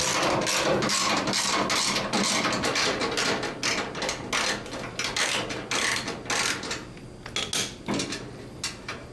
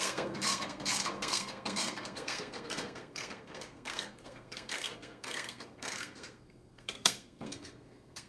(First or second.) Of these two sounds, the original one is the first